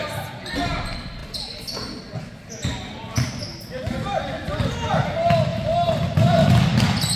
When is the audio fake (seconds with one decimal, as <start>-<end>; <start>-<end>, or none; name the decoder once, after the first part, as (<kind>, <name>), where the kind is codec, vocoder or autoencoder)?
none